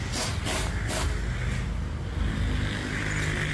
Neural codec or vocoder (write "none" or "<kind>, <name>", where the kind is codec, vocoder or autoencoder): none